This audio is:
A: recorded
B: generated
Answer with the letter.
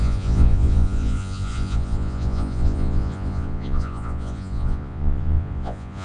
B